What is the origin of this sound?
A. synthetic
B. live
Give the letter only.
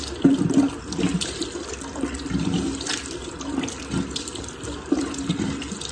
B